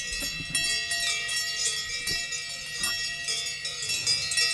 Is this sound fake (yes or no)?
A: no